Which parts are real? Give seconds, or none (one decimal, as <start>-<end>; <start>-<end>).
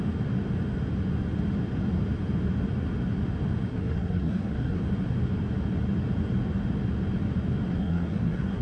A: 0.0-3.7; 4.8-7.7